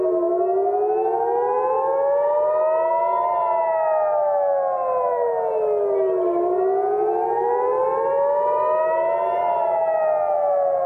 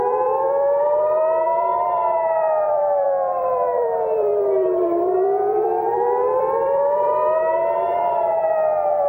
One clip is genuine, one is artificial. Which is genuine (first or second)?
first